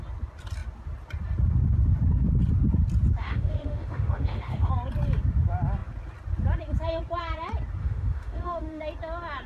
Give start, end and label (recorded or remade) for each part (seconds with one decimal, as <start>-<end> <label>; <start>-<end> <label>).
0.0-3.2 recorded; 3.2-4.7 remade; 4.7-7.8 recorded; 7.8-8.8 remade; 8.8-9.5 recorded